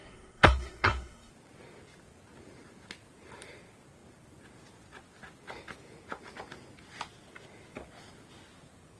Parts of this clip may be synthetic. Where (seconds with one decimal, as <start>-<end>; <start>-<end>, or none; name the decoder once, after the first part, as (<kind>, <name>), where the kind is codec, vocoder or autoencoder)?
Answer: 0.0-1.3 (codec, SNAC)